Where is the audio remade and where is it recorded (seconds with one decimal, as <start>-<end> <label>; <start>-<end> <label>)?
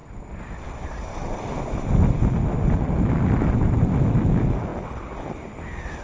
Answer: 0.0-6.0 recorded